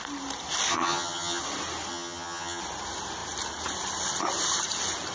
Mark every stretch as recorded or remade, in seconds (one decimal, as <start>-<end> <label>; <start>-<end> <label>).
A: 0.0-0.7 recorded; 0.7-1.4 remade; 1.4-1.9 recorded; 1.9-2.6 remade; 2.6-5.1 recorded